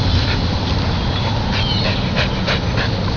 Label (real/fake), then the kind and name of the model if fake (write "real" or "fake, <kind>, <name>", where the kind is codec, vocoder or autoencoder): real